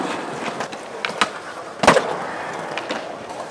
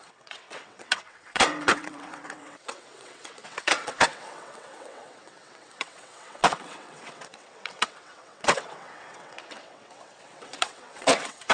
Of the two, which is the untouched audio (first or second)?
first